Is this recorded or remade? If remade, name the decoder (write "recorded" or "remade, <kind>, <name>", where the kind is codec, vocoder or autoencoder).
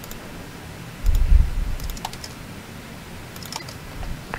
recorded